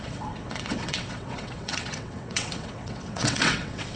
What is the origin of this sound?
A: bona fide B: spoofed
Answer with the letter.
B